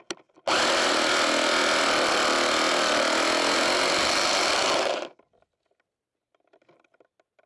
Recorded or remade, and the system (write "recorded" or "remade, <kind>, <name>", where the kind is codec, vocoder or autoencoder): recorded